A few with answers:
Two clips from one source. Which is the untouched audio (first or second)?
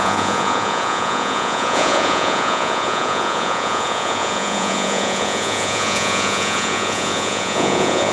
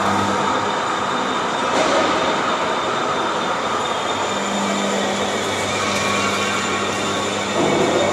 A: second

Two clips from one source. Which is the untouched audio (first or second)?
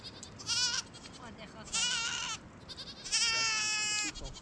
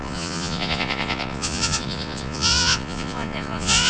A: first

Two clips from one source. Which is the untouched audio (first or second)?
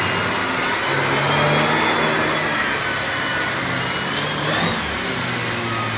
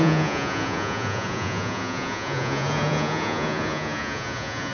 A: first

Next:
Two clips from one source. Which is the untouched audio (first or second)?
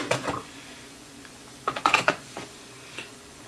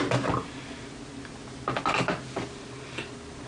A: second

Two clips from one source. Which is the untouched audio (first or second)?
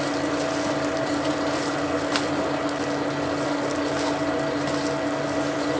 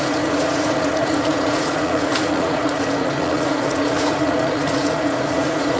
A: first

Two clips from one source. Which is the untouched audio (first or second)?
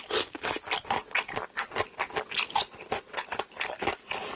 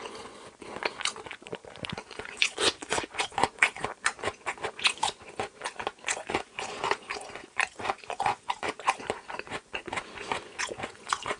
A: first